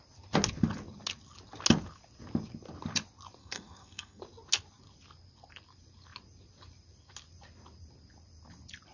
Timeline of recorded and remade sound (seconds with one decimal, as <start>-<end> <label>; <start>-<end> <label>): 0.0-3.4 recorded; 3.4-4.2 remade; 4.2-8.9 recorded